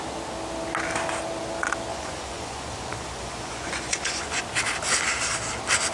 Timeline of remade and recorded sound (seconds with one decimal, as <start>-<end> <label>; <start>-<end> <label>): 0.0-1.9 recorded; 1.9-4.4 remade; 4.4-5.9 recorded